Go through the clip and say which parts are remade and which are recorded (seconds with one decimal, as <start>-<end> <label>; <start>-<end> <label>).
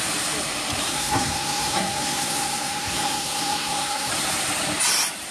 0.0-0.9 recorded; 0.9-4.1 remade; 4.1-5.3 recorded